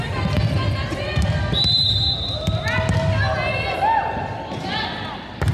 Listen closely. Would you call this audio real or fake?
real